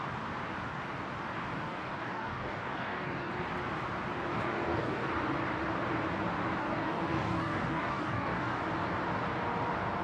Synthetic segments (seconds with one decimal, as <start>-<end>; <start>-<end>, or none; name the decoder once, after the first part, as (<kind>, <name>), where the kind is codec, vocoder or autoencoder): 1.5-3.3 (codec, DAC); 4.3-5.1; 6.6-8.6